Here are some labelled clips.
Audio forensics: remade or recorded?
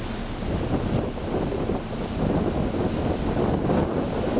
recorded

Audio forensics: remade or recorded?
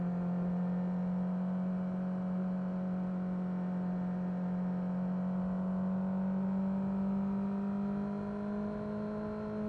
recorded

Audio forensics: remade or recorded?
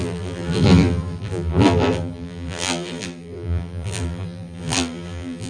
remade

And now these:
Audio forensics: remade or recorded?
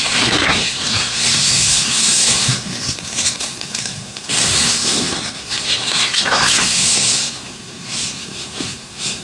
remade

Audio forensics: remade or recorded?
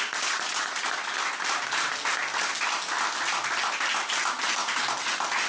recorded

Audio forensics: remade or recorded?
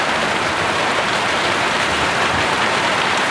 remade